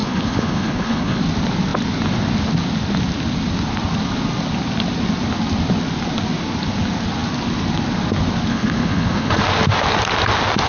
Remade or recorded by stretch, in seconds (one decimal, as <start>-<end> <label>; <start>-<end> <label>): 0.0-1.2 remade; 1.2-8.5 recorded; 8.5-9.4 remade; 9.4-10.7 recorded